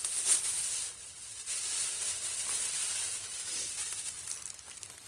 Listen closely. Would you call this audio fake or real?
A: real